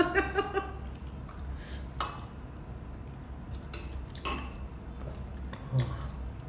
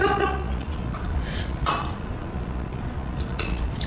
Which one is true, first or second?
first